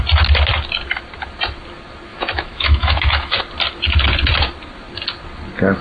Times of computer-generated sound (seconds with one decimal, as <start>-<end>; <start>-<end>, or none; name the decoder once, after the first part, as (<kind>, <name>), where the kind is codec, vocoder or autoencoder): 2.1-3.4 (autoencoder, DAC-VAE)